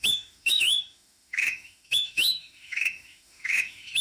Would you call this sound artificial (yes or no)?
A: yes